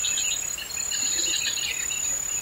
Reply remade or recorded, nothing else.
recorded